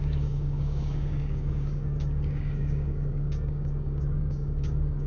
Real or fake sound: fake